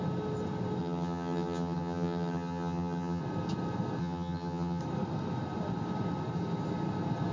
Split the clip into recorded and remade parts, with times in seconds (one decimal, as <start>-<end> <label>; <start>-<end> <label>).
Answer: 0.0-0.8 recorded; 0.8-3.2 remade; 3.2-4.0 recorded; 4.0-4.8 remade; 4.8-7.3 recorded